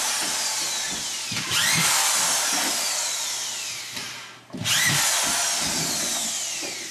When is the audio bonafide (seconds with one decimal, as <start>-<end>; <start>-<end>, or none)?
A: 0.0-6.9